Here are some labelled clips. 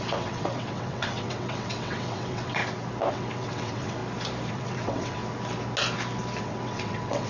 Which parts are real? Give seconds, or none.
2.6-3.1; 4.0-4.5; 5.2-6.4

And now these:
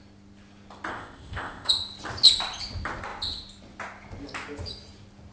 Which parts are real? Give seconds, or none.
0.0-0.9; 1.7-5.3